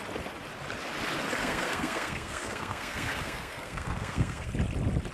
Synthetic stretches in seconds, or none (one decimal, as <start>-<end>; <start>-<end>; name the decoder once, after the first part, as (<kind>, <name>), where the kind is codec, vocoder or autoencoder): 1.4-4.5 (codec, SNAC)